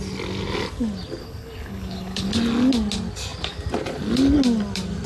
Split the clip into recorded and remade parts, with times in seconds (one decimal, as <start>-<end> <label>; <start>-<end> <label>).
0.0-1.2 recorded; 1.2-2.3 remade; 2.3-5.1 recorded